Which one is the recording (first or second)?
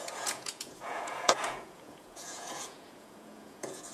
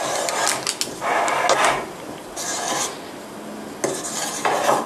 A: second